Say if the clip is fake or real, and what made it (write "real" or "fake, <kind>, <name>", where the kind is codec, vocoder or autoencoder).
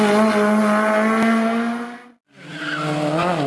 real